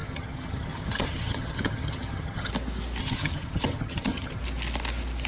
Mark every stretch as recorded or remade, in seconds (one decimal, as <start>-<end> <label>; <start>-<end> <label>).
0.0-2.5 remade; 2.5-3.0 recorded; 3.0-4.4 remade; 4.4-5.3 recorded